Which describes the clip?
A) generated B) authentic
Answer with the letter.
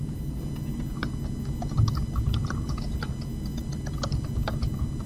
B